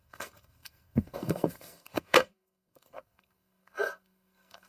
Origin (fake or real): fake